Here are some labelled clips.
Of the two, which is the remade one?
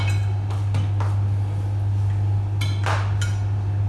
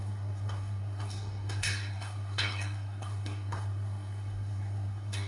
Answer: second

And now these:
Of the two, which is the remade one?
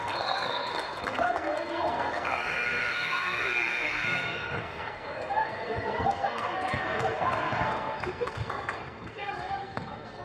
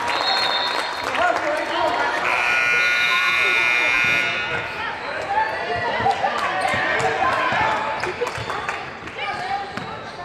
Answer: first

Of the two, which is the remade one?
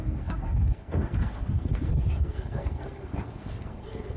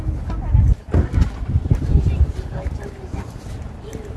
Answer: first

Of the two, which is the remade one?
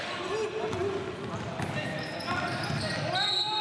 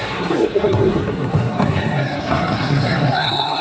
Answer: second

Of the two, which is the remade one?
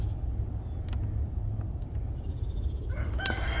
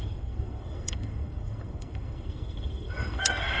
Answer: second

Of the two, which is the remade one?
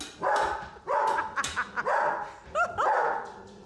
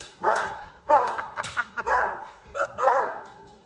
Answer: second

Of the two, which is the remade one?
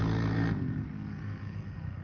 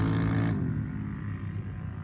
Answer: first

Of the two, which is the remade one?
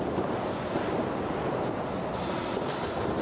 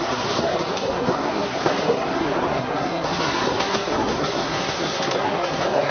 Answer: second